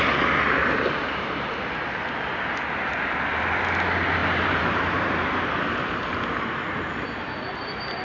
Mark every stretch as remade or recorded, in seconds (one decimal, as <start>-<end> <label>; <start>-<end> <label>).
0.0-0.6 recorded; 0.6-2.0 remade; 2.0-2.6 recorded; 2.6-3.3 remade; 3.3-4.2 recorded; 4.2-5.7 remade; 5.7-8.0 recorded